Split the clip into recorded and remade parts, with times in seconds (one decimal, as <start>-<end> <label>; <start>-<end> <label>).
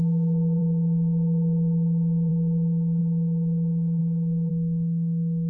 0.0-4.5 remade; 4.5-5.5 recorded